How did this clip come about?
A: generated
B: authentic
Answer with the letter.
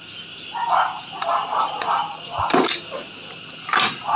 B